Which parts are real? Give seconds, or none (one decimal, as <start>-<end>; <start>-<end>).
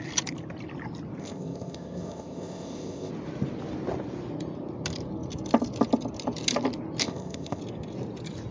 0.0-1.2; 3.1-7.0; 7.6-8.5